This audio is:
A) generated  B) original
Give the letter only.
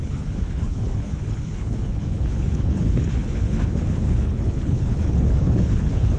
A